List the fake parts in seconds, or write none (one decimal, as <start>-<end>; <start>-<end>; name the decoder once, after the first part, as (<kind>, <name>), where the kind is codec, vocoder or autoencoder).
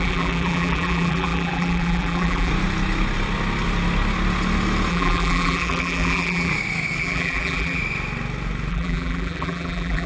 0.0-2.5 (vocoder, BigVGAN v2); 4.9-6.5; 7.0-7.8; 8.7-10.1